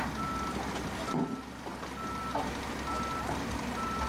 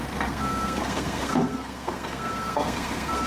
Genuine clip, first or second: first